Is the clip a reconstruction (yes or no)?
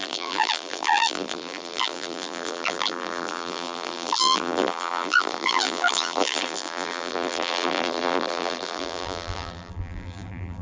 yes